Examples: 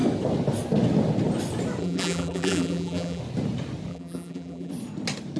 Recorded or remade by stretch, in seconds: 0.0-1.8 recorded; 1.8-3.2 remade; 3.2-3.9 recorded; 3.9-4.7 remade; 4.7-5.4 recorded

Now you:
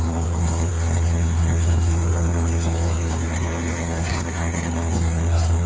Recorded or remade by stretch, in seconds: 0.0-5.7 remade

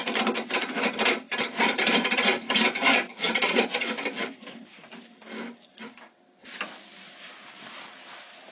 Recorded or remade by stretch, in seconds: 0.0-2.9 recorded; 2.9-3.9 remade; 3.9-8.5 recorded

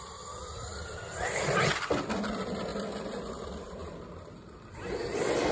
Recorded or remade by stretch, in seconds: 0.0-5.5 recorded